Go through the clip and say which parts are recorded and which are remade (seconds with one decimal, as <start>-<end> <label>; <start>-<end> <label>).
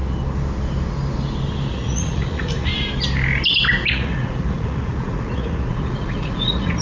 0.0-1.7 recorded; 1.7-2.7 remade; 2.7-3.9 recorded; 3.9-6.8 remade